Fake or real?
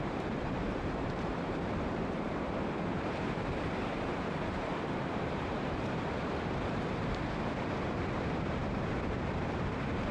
fake